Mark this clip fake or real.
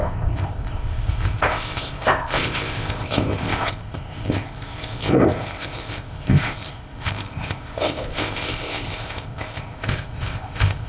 fake